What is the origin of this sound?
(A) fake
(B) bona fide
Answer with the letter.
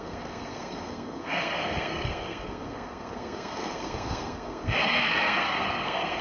A